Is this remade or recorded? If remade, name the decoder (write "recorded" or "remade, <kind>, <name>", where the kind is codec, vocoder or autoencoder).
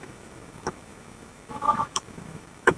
remade, autoencoder, DAC-VAE